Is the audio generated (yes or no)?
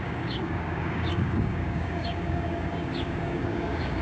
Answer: yes